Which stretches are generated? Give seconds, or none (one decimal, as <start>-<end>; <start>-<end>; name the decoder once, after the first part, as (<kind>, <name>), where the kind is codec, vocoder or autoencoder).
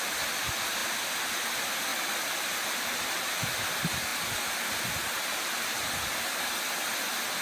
none